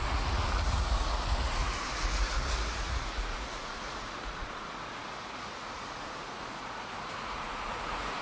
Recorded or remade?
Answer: remade